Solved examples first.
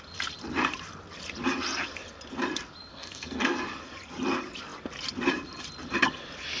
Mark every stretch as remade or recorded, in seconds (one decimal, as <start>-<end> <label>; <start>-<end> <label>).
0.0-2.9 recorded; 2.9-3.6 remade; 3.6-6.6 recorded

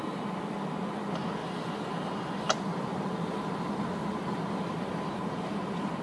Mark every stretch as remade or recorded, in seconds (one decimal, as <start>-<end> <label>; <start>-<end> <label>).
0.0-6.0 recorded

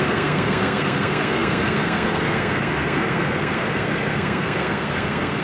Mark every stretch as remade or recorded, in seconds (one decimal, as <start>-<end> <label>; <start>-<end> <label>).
0.0-5.4 remade